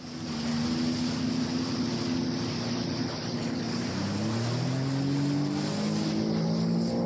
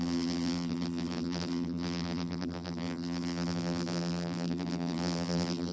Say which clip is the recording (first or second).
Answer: first